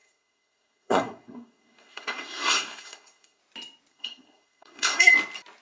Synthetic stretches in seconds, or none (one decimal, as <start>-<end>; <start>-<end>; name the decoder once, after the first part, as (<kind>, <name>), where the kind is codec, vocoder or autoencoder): 0.0-3.4 (codec, SNAC); 3.9-5.1